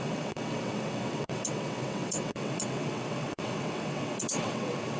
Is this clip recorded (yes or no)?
no